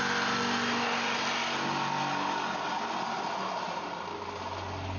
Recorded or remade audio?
recorded